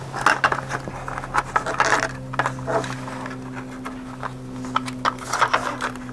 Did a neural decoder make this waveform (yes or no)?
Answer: no